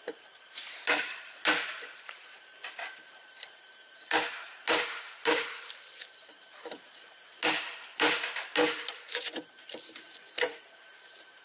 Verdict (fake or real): fake